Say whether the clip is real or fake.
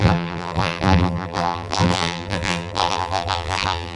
fake